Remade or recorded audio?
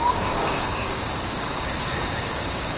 remade